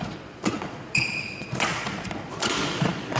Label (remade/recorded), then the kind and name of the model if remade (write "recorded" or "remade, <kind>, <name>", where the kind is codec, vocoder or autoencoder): remade, vocoder, Vocos